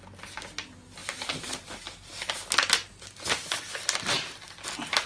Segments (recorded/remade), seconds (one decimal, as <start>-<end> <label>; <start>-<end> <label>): 0.0-5.1 recorded